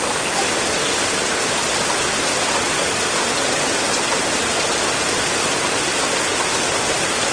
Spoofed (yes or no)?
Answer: no